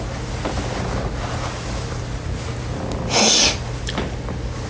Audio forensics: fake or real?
real